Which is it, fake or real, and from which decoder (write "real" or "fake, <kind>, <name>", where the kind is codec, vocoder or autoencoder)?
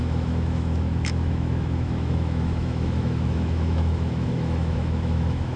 fake, autoencoder, DAC-VAE